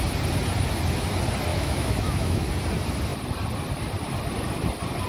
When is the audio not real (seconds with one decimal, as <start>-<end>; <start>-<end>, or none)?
1.5-2.5